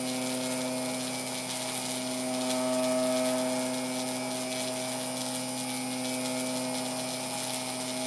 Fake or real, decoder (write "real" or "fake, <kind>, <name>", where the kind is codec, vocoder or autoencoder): real